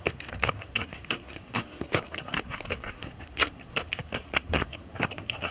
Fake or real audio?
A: fake